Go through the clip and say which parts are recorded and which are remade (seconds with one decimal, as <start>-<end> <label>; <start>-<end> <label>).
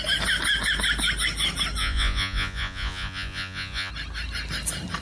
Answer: 0.0-1.8 recorded; 1.8-3.9 remade; 3.9-5.0 recorded